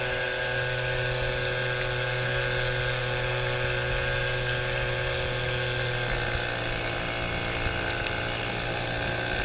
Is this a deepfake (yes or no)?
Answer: no